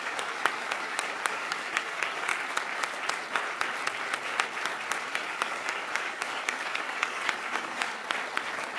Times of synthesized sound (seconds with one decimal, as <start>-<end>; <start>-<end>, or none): 0.0-2.3; 5.0-8.0